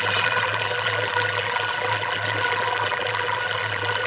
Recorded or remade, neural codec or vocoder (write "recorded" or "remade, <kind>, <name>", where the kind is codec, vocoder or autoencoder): remade, vocoder, BigVGAN v2